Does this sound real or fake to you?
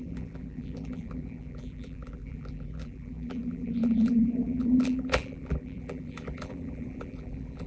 fake